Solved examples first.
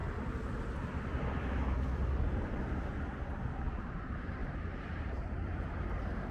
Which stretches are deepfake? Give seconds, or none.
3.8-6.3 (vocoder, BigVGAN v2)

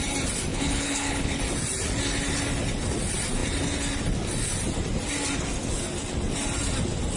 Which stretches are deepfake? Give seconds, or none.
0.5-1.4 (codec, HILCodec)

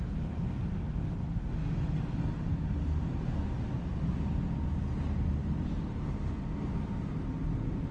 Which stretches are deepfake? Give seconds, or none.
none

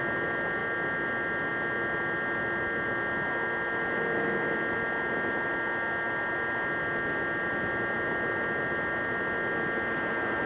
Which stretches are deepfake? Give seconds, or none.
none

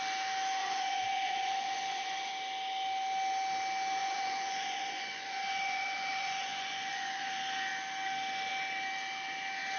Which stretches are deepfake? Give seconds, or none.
0.6-2.3 (vocoder, Vocos); 4.0-7.3

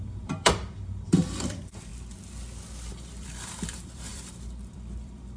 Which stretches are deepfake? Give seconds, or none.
0.0-1.9 (vocoder, BigVGAN v2); 2.9-5.4

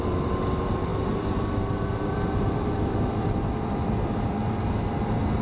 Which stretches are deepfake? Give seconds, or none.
0.0-5.4 (vocoder, BigVGAN v2)